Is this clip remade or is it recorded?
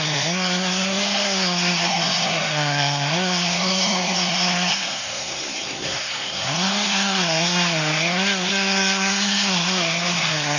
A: remade